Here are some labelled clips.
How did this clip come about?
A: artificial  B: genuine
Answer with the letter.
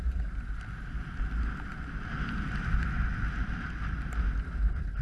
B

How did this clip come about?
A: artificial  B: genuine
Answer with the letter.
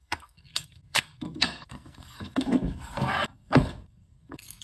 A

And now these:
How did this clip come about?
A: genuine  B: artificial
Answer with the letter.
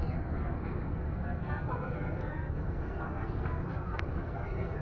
B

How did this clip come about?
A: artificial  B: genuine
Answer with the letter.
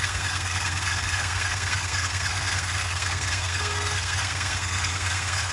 A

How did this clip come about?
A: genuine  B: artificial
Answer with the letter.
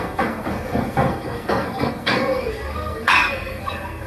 B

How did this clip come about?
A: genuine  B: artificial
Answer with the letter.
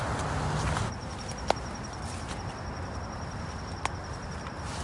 A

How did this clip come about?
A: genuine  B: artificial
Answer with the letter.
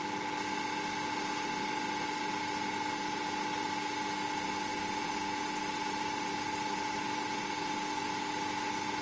A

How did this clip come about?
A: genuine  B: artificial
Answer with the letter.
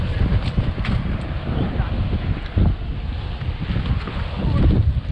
A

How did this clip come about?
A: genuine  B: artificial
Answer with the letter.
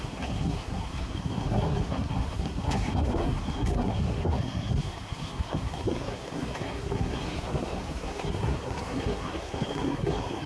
B